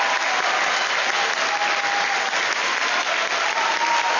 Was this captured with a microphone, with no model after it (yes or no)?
yes